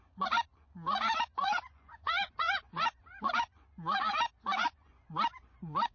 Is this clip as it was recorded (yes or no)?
no